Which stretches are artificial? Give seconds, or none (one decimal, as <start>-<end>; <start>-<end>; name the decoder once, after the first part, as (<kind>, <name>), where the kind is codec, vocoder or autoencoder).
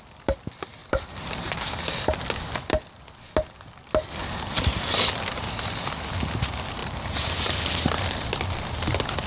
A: 0.8-1.7 (vocoder, BigVGAN v2); 4.2-5.0; 6.8-7.8